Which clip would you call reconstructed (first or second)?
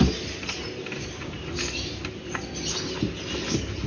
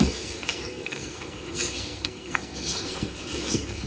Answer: second